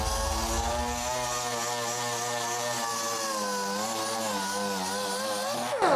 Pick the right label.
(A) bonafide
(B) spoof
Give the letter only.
A